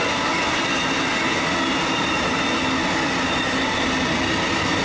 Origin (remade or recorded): recorded